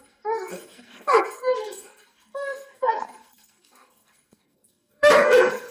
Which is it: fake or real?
fake